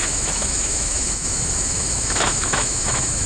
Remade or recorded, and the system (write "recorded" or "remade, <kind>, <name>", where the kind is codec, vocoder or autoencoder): remade, autoencoder, DAC-VAE